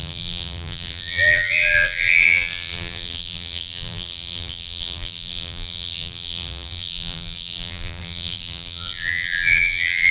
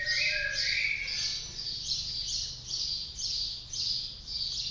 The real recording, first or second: second